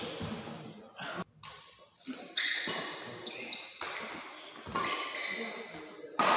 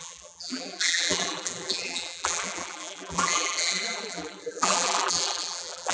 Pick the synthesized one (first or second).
second